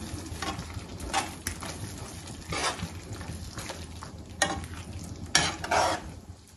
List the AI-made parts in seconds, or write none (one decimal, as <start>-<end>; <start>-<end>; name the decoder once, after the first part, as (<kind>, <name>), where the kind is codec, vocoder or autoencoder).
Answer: none